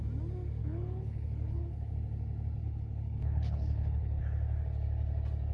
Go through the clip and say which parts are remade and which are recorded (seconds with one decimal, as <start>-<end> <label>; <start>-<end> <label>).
0.0-0.6 recorded; 0.6-1.9 remade; 1.9-2.6 recorded; 2.6-4.2 remade; 4.2-5.5 recorded